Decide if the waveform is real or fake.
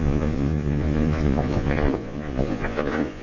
fake